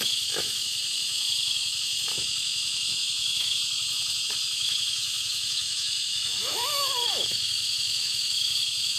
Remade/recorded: remade